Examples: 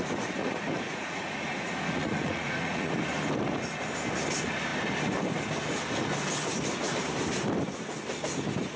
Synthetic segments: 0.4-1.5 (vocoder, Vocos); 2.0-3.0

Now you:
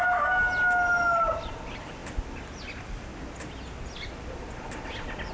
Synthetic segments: none